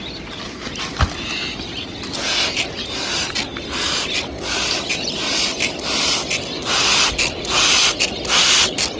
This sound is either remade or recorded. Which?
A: recorded